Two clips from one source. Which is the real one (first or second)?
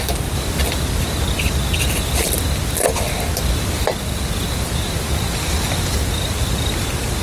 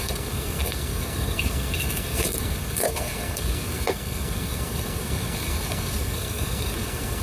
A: first